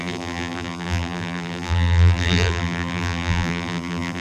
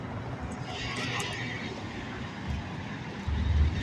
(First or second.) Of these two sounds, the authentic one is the second